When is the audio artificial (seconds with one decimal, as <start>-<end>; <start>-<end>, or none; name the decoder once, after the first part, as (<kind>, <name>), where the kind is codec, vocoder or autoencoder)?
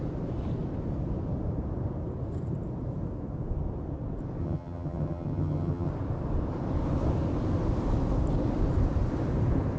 4.4-5.9 (vocoder, HiFi-GAN)